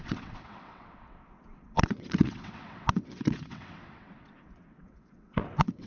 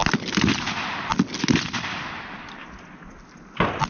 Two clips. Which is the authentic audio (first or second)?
second